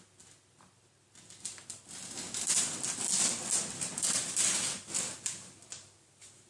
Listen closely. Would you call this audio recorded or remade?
recorded